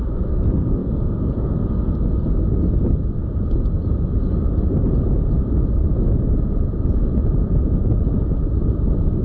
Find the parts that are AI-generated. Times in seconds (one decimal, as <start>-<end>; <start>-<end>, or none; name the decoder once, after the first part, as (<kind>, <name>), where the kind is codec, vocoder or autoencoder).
0.8-1.7 (vocoder, Vocos); 7.2-8.0